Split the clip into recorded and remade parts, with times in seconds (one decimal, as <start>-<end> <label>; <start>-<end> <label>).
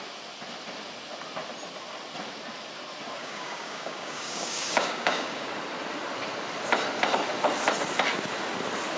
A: 0.0-3.2 recorded; 3.2-5.5 remade; 5.5-9.0 recorded